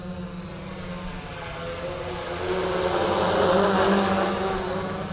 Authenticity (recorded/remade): recorded